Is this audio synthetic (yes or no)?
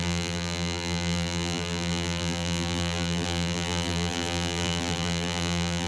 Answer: yes